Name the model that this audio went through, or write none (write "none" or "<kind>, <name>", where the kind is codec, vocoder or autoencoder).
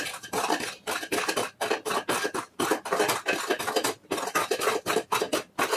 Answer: none